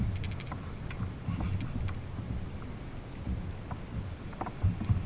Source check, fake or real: real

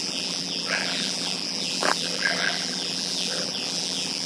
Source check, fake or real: fake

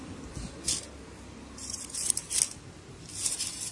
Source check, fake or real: real